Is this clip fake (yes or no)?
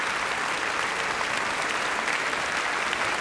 no